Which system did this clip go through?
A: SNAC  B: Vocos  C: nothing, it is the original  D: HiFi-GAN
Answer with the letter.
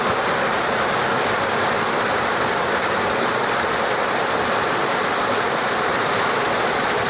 C